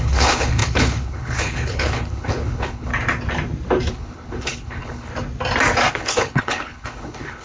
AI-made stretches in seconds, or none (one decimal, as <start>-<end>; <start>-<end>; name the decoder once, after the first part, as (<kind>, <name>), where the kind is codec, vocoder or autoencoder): 0.0-2.9 (codec, HILCodec); 3.9-5.1; 5.9-7.4